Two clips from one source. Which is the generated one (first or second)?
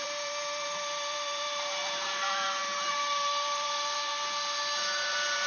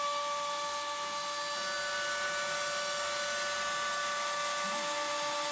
first